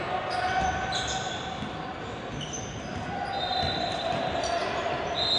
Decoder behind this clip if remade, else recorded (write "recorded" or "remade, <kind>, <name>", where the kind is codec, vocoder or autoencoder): recorded